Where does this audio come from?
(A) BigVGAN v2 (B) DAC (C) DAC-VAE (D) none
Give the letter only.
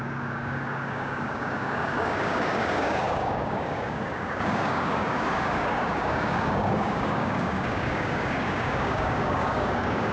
B